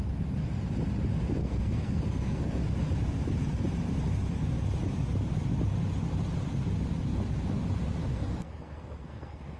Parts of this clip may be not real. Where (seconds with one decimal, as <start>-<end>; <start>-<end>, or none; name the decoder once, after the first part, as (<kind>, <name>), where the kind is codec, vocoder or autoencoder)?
1.4-2.6 (codec, SNAC); 8.0-9.6